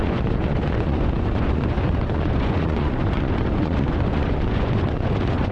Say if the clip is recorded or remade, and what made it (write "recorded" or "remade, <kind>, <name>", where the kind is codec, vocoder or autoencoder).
remade, vocoder, Vocos